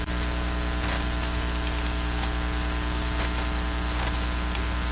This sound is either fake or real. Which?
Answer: real